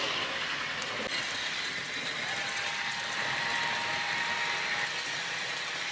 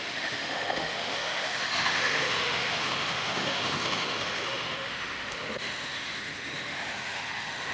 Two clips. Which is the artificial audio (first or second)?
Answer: second